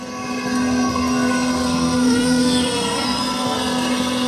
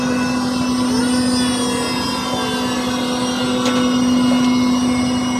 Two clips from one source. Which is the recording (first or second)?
second